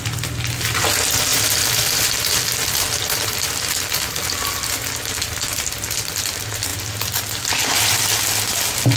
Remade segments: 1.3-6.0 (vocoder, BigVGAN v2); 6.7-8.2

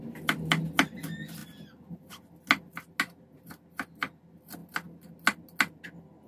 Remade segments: none

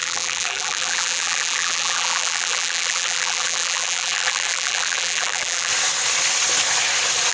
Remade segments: 0.0-5.7 (vocoder, BigVGAN v2)

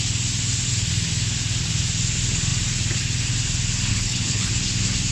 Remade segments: 3.9-4.5 (codec, HILCodec)

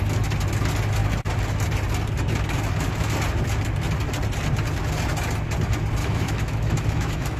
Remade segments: 6.0-7.4 (autoencoder, DAC-VAE)

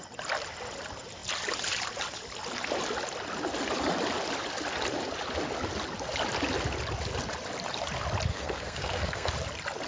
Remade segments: 8.3-9.3 (codec, SNAC)

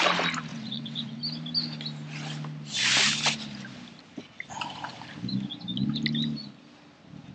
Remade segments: 0.5-1.2 (vocoder, WaveNeXt)

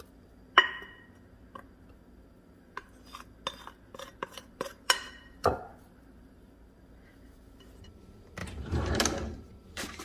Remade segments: 4.1-6.5 (vocoder, BigVGAN v2); 8.4-9.0